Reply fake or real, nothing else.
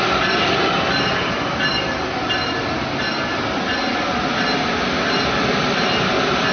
real